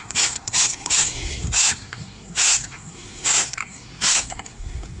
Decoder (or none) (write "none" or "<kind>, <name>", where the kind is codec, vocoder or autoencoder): codec, SNAC